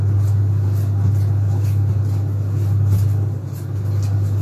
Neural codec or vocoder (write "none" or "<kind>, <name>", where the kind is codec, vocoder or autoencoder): none